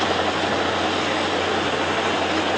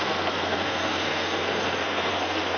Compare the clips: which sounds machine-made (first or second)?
second